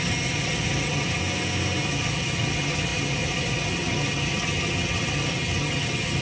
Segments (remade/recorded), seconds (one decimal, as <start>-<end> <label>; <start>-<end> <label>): 0.0-1.2 remade; 1.2-1.8 recorded; 1.8-6.2 remade